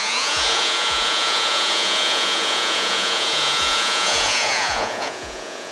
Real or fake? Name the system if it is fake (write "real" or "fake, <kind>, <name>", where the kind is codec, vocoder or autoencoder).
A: fake, vocoder, Vocos